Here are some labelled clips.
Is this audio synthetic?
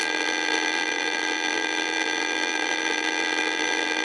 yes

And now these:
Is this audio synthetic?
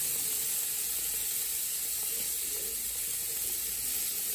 no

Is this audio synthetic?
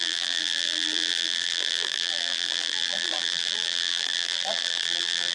yes